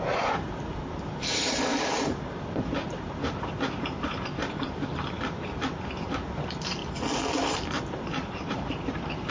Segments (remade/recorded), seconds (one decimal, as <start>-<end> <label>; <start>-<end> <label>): 0.0-6.8 remade; 6.8-7.8 recorded; 7.8-9.3 remade